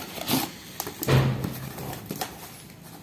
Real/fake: real